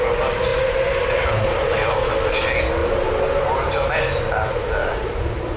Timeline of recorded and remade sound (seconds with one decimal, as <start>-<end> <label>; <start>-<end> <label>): 0.0-2.8 recorded; 2.8-3.7 remade; 3.7-4.8 recorded; 4.8-5.6 remade

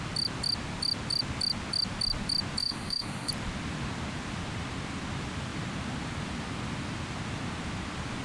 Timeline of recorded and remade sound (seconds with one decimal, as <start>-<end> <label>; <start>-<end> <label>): 0.0-2.6 recorded; 2.6-3.3 remade; 3.3-8.2 recorded

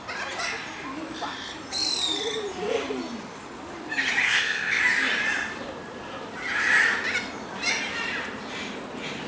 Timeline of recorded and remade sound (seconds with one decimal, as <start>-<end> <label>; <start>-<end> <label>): 0.0-4.2 recorded; 4.2-4.8 remade; 4.8-9.3 recorded

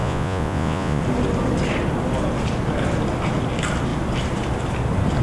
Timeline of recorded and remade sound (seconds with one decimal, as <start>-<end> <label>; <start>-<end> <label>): 0.0-1.0 remade; 1.0-5.2 recorded

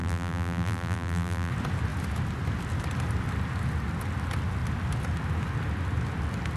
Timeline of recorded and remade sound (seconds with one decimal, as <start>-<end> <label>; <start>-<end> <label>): 0.0-1.5 remade; 1.5-6.6 recorded